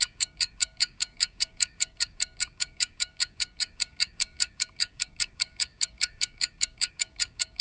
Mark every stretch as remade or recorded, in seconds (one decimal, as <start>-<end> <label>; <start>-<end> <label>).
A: 0.0-7.6 remade